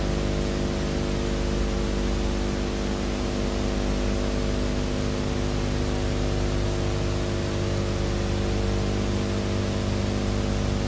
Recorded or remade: recorded